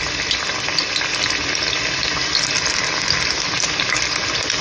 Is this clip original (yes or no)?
yes